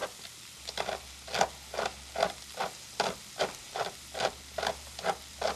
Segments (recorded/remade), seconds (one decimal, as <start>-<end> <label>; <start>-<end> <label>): 0.0-5.6 recorded